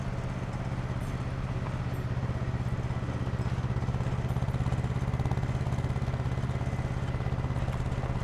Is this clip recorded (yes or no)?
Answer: yes